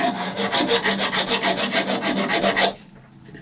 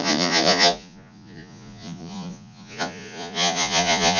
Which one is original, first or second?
first